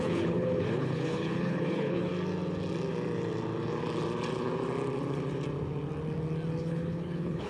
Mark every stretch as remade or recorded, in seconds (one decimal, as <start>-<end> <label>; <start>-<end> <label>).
0.0-2.1 remade; 2.1-6.6 recorded; 6.6-7.5 remade